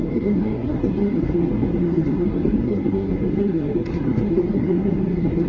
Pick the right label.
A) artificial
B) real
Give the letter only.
A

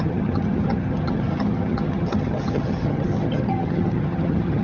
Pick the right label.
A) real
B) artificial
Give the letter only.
B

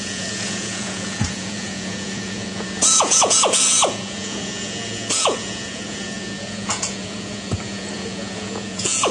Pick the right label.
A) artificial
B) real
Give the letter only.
A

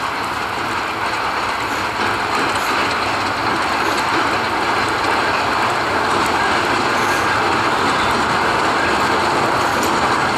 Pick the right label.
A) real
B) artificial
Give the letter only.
A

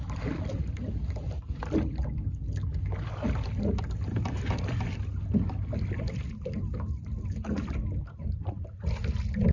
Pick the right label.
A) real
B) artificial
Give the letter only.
A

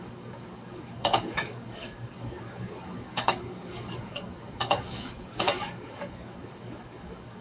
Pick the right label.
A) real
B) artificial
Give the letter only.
B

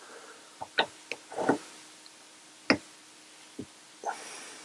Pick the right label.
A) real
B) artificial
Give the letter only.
A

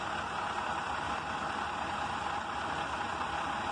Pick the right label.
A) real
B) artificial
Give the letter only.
A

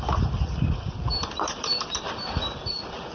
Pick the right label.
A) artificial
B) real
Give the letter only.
B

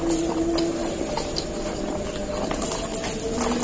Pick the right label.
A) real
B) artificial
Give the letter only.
A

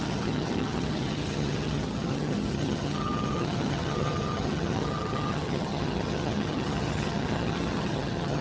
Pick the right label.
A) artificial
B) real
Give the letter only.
A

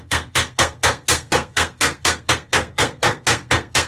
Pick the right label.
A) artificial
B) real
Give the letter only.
A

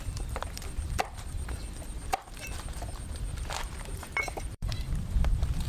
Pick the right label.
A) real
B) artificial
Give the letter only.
B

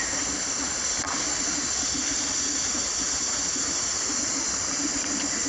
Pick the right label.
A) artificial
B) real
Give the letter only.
B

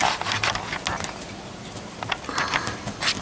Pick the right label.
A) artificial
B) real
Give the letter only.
B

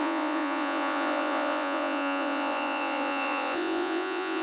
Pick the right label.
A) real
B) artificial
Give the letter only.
B